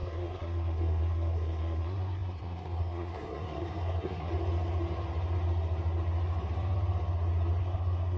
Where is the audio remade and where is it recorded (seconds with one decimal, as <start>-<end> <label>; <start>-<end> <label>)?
0.0-4.3 remade; 4.3-7.6 recorded; 7.6-8.2 remade